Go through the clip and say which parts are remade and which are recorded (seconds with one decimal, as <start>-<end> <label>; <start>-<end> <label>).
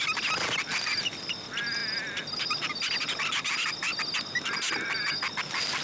0.0-5.8 recorded